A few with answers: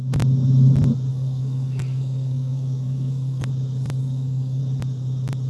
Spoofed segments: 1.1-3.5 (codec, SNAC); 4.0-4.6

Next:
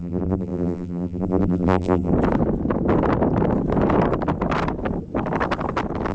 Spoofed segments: 0.0-2.1 (vocoder, BigVGAN v2)

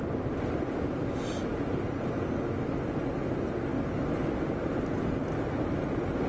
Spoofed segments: none

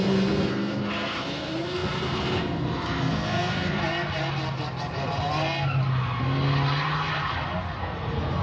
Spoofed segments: 0.0-3.8 (codec, SNAC); 7.8-8.4

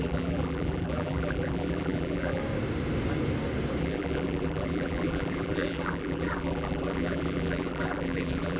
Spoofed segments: 0.0-2.4 (vocoder, BigVGAN v2); 3.8-8.6

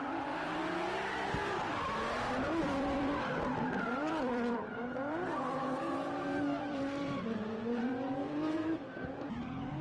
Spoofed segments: 0.0-0.6 (vocoder, BigVGAN v2); 2.6-9.8

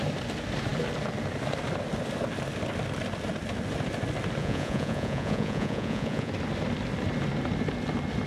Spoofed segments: 4.4-6.3 (vocoder, Vocos)

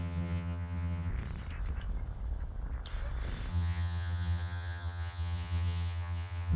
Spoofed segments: 0.0-1.1 (vocoder, HiFi-GAN); 3.5-6.6